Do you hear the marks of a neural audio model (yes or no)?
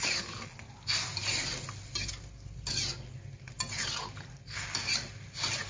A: no